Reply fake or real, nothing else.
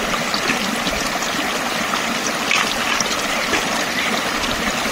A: real